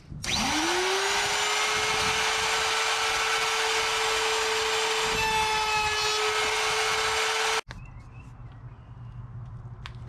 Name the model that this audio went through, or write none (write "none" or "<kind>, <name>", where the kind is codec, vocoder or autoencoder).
none